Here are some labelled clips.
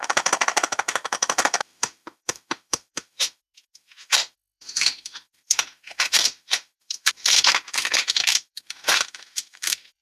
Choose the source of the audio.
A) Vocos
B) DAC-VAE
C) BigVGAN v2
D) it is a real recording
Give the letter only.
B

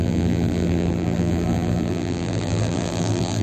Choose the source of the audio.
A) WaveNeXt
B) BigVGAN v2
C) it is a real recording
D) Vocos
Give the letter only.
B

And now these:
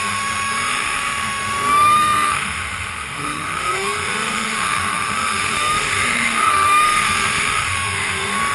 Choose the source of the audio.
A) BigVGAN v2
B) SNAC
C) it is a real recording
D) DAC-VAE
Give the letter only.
D